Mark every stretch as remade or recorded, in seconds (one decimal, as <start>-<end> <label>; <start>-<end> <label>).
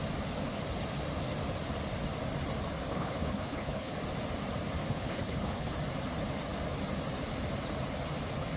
0.0-2.9 recorded; 2.9-3.9 remade; 3.9-4.8 recorded; 4.8-5.7 remade; 5.7-8.6 recorded